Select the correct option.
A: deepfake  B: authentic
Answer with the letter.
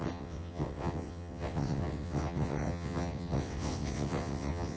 A